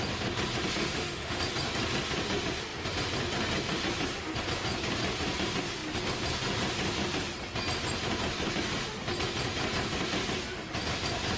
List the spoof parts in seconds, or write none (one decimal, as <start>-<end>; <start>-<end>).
0.8-1.4